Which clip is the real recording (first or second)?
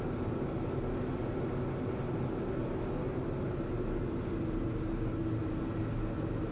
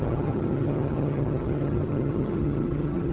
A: first